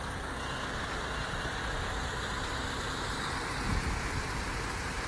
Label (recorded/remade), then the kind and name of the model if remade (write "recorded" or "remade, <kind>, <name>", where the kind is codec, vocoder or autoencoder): recorded